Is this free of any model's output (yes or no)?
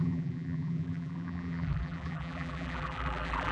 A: no